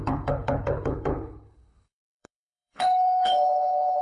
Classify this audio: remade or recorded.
remade